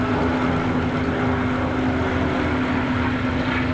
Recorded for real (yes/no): yes